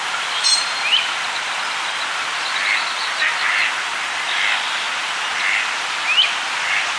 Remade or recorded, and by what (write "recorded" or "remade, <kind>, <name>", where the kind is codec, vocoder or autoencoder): recorded